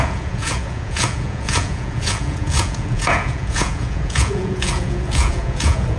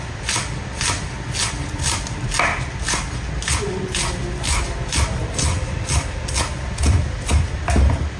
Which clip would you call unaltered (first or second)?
second